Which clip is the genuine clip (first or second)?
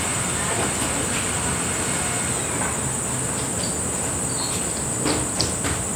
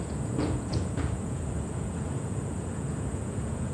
first